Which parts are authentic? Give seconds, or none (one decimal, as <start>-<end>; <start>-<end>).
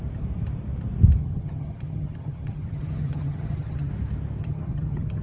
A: 0.0-1.2; 3.9-4.4